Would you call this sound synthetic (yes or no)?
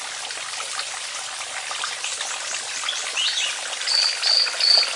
no